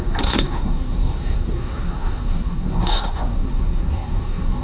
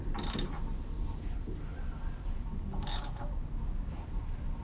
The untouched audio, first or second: second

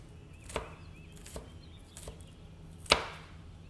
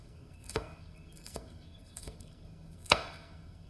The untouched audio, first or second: first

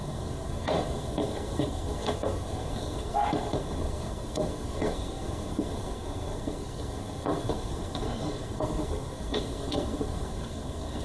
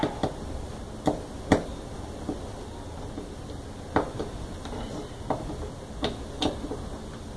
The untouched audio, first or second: second